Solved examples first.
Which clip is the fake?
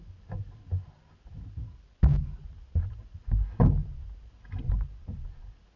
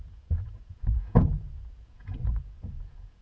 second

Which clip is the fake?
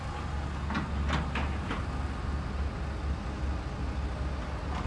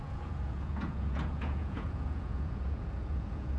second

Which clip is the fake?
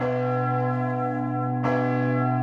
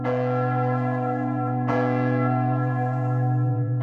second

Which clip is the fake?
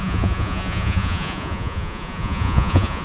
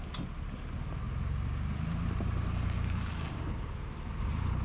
first